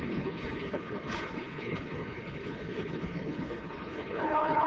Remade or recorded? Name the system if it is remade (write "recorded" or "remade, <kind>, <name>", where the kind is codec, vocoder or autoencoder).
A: remade, codec, HILCodec